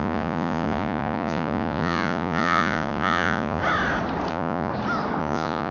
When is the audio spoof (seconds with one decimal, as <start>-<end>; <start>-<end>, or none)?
0.0-3.6; 4.3-4.7; 5.2-5.7